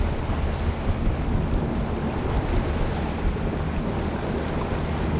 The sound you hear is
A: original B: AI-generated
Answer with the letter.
A